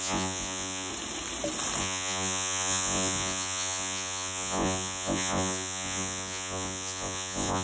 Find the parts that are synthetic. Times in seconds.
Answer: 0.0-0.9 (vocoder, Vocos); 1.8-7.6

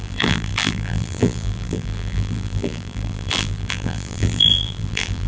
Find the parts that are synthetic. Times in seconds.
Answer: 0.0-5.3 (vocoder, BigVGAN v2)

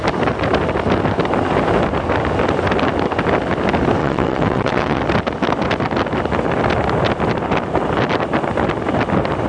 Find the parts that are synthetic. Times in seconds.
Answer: 4.0-5.0 (vocoder, WaveNeXt)

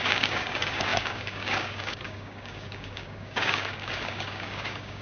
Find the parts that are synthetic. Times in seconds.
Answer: 0.0-5.0 (codec, DAC)

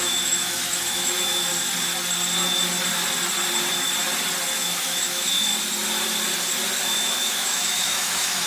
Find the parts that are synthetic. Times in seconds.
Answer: 0.0-1.5 (autoencoder, DAC-VAE); 4.6-5.5; 6.8-8.5